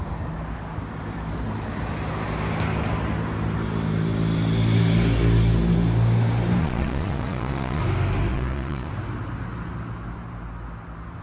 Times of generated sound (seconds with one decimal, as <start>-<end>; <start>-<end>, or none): 6.6-7.8; 8.3-8.9

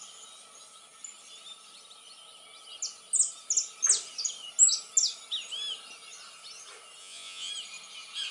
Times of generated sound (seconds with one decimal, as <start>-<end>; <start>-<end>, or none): 7.0-7.5

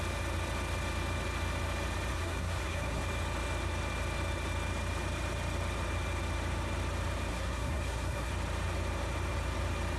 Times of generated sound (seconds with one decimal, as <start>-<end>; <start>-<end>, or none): 2.1-3.0; 7.3-8.3

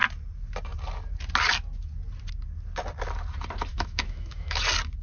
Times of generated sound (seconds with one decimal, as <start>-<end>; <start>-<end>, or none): 3.7-4.6

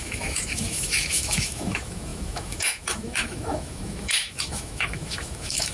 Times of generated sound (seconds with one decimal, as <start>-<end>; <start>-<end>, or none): 0.0-5.7

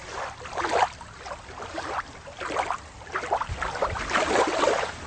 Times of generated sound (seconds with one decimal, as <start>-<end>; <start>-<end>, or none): none

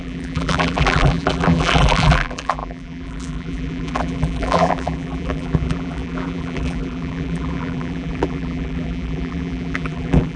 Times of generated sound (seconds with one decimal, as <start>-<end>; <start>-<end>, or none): 0.0-10.4

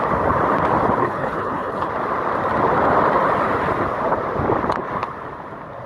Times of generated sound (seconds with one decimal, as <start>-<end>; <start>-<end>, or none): 1.0-1.9